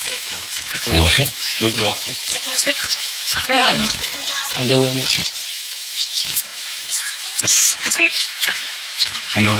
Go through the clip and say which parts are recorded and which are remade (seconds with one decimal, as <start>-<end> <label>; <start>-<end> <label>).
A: 0.0-4.1 remade; 4.1-5.5 recorded; 5.5-9.6 remade